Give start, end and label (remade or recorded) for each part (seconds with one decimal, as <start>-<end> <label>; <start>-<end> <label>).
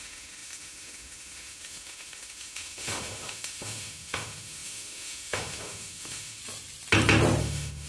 0.0-6.4 remade; 6.4-7.4 recorded; 7.4-7.9 remade